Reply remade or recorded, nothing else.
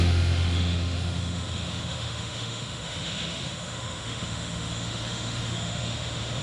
remade